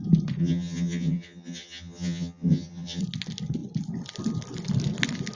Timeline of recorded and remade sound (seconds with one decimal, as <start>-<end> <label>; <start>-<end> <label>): 0.0-0.4 recorded; 0.4-3.0 remade; 3.0-5.3 recorded